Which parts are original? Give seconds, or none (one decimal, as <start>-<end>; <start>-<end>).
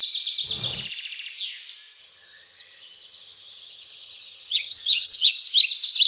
0.0-2.0; 5.3-6.1